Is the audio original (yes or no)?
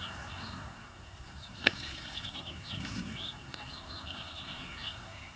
no